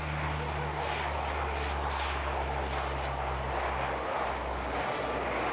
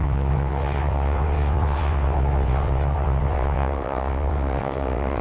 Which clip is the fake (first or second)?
second